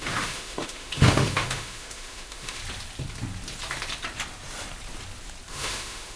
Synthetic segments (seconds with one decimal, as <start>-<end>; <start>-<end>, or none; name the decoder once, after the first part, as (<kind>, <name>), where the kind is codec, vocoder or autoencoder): 0.0-2.6 (autoencoder, DAC-VAE); 5.5-6.2